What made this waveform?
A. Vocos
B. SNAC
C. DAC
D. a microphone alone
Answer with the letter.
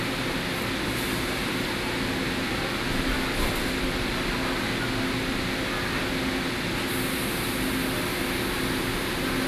D